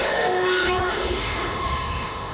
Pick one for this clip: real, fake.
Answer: fake